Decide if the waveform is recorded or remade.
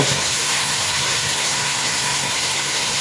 remade